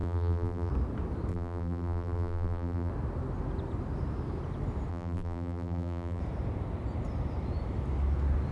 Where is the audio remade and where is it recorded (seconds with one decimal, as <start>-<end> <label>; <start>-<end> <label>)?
0.0-0.7 remade; 0.7-1.3 recorded; 1.3-2.9 remade; 2.9-4.9 recorded; 4.9-6.2 remade; 6.2-8.5 recorded